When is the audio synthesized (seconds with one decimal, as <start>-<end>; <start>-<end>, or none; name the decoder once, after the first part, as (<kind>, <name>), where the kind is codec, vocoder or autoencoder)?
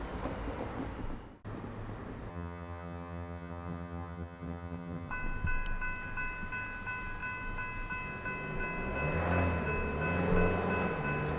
2.3-5.1 (vocoder, HiFi-GAN)